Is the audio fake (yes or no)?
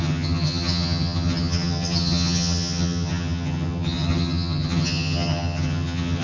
yes